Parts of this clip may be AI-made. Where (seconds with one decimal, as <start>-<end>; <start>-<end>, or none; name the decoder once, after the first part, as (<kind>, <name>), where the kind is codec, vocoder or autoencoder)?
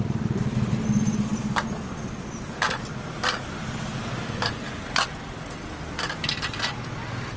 none